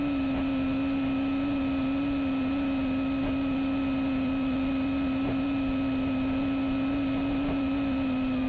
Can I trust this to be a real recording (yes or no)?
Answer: yes